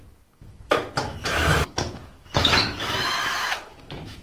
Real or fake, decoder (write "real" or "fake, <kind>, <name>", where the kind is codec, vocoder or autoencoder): fake, autoencoder, DAC-VAE